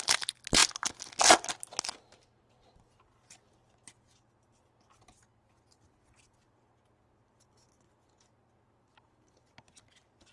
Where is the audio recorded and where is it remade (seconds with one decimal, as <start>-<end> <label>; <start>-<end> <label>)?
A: 0.0-10.3 recorded